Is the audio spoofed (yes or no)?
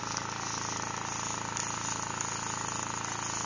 no